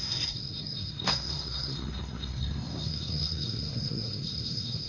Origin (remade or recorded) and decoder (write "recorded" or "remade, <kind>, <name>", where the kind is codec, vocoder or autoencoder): remade, codec, SNAC